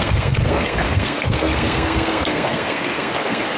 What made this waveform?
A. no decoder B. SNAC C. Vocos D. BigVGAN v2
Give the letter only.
B